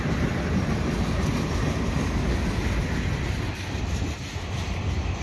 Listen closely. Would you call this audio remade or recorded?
recorded